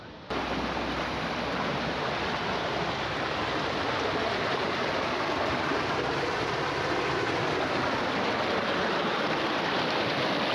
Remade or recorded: recorded